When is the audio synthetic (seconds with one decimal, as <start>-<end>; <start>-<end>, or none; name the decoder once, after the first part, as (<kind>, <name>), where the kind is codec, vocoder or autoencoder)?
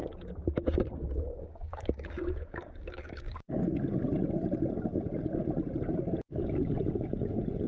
0.0-3.5 (codec, DAC)